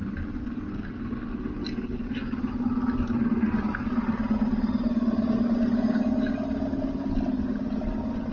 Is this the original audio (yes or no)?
yes